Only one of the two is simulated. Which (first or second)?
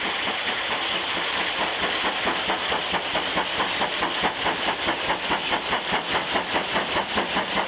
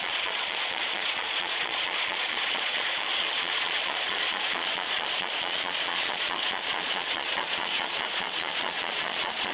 second